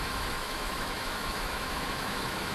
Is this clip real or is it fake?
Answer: fake